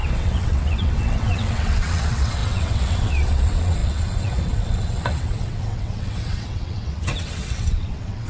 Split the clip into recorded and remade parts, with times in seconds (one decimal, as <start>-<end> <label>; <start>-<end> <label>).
0.0-8.3 remade